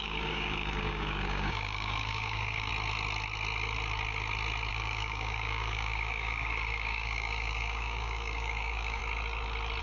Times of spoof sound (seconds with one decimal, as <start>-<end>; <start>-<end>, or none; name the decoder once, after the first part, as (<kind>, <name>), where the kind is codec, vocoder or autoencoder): 0.0-2.7 (codec, DAC); 4.7-9.0